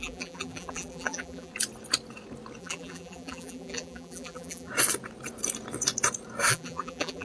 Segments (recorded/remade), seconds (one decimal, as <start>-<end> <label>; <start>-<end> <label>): 0.0-1.5 remade; 1.5-2.6 recorded; 2.6-4.7 remade; 4.7-6.5 recorded; 6.5-7.2 remade